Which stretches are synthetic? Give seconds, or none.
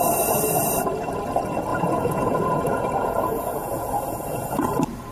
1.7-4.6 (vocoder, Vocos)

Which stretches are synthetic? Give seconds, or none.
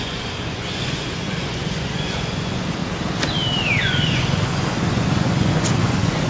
0.0-2.8 (vocoder, Vocos); 3.8-6.3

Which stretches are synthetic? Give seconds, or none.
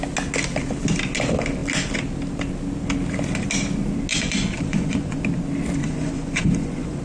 4.1-5.2 (vocoder, Vocos); 5.8-7.0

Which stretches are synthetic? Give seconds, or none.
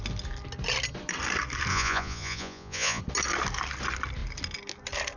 1.7-3.0 (vocoder, Vocos)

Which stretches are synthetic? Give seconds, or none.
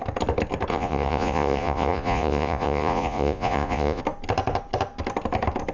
0.7-4.0 (vocoder, Vocos)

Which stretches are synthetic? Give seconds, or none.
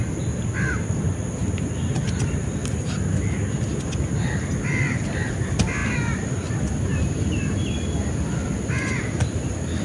none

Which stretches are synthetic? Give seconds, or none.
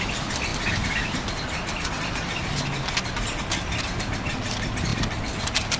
none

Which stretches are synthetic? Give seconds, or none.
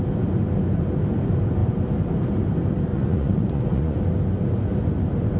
2.9-4.0 (vocoder, Vocos)